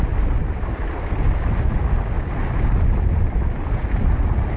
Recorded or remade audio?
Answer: recorded